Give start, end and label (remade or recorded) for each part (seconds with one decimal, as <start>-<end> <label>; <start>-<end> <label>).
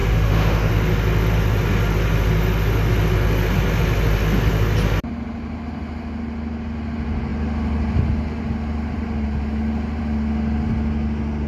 0.0-0.7 remade; 0.7-11.5 recorded